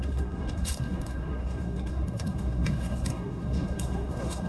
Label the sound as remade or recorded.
remade